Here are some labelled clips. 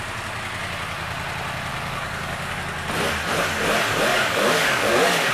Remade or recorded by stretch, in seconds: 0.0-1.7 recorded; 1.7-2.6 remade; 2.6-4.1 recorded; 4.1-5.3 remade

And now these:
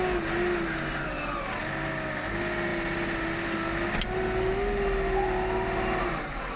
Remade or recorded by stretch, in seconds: 0.0-6.6 recorded

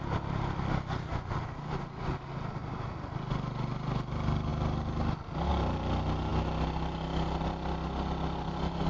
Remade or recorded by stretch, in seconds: 0.0-8.9 recorded

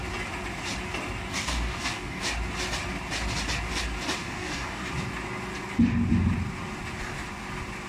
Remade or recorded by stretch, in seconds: 0.0-1.3 recorded; 1.3-2.2 remade; 2.2-4.2 recorded; 4.2-4.9 remade; 4.9-7.9 recorded

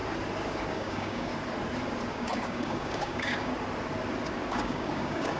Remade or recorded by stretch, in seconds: 0.0-0.7 recorded; 0.7-1.3 remade; 1.3-2.1 recorded; 2.1-3.5 remade; 3.5-4.5 recorded; 4.5-5.4 remade

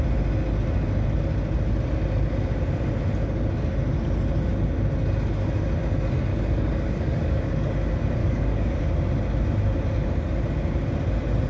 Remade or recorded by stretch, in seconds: 0.0-6.3 recorded; 6.3-7.7 remade; 7.7-8.2 recorded; 8.2-8.8 remade; 8.8-11.5 recorded

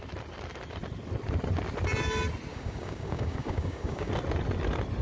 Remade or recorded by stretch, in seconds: 0.0-2.5 recorded; 2.5-4.1 remade; 4.1-5.0 recorded